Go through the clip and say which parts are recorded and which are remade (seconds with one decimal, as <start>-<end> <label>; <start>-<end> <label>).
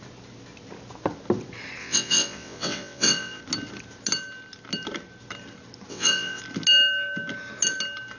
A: 0.0-1.8 recorded; 1.8-3.4 remade; 3.4-5.9 recorded; 5.9-6.4 remade; 6.4-8.2 recorded